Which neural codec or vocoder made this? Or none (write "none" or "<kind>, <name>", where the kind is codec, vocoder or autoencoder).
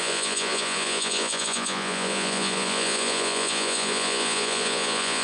vocoder, Vocos